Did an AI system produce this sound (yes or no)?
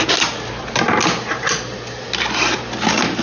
no